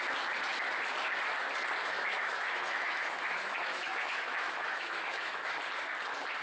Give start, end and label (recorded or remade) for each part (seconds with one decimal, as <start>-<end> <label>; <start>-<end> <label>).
0.0-1.8 recorded; 1.8-5.6 remade; 5.6-6.4 recorded